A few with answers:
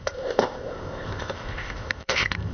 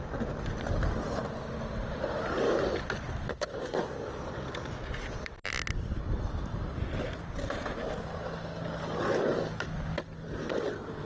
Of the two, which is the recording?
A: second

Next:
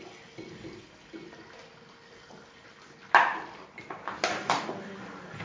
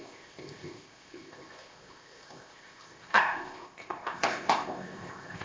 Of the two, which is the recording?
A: first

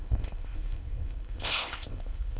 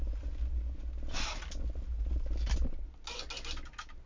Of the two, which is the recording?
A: second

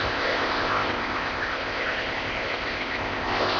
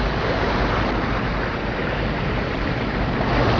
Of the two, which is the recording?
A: second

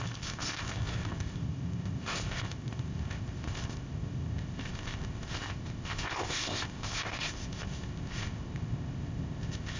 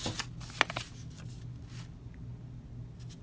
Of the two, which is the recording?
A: second